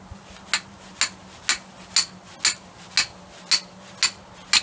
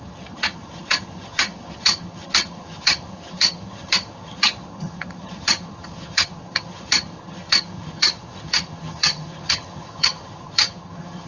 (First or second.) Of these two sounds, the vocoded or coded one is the second